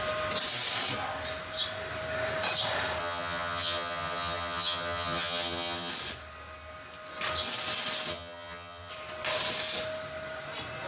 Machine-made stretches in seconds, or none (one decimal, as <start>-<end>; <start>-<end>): 3.0-5.9; 8.1-8.9